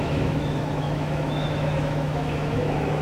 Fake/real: fake